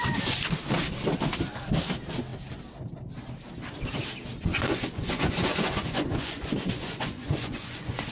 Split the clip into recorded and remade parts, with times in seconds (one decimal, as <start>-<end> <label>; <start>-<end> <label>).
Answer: 0.0-4.5 recorded; 4.5-8.1 remade